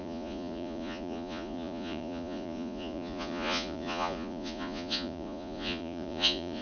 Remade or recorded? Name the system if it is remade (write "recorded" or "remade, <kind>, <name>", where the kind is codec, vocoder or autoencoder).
remade, vocoder, Vocos